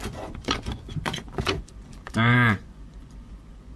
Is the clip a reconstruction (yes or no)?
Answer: yes